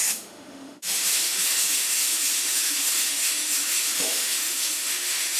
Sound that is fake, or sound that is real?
fake